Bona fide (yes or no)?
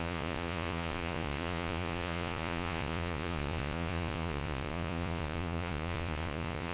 no